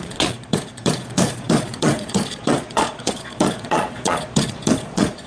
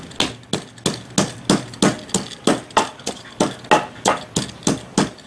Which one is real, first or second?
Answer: second